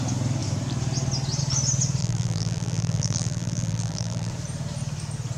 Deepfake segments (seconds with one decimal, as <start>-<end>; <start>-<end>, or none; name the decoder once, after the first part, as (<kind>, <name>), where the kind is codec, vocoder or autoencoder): 2.0-4.3 (vocoder, BigVGAN v2)